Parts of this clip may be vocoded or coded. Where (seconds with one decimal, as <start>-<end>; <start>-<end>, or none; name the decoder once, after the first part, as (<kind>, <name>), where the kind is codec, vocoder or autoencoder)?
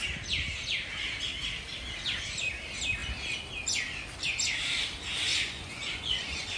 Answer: 5.3-6.6 (vocoder, Vocos)